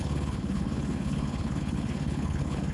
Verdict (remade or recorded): remade